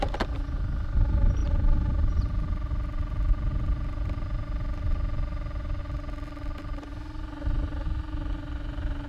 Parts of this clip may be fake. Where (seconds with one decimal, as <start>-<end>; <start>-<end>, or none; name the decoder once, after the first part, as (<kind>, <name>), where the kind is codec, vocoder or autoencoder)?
none

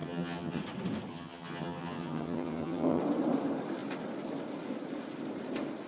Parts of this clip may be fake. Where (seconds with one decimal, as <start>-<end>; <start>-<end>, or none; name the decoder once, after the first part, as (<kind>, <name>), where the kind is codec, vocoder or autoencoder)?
0.0-0.6 (vocoder, HiFi-GAN); 1.1-3.0

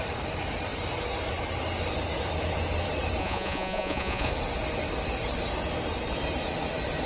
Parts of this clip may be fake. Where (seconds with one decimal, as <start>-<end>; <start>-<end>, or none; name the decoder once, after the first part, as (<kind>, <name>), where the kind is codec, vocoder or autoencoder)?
3.2-4.3 (vocoder, Vocos)

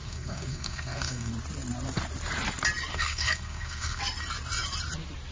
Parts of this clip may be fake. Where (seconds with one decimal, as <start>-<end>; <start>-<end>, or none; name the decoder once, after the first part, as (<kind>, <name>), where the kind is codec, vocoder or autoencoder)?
0.0-1.3 (codec, SNAC); 2.9-4.0